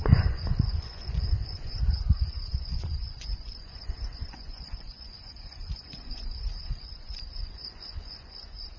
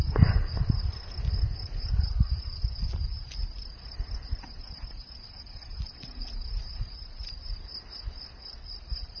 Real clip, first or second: second